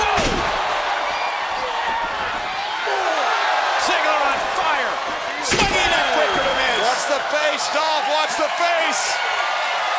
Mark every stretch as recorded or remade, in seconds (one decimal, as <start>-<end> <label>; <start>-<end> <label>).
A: 0.0-6.5 recorded; 6.5-8.7 remade; 8.7-10.0 recorded